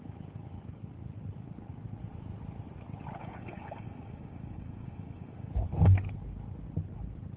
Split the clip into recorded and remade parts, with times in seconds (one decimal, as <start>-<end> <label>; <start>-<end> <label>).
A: 0.0-3.2 recorded; 3.2-5.5 remade; 5.5-7.4 recorded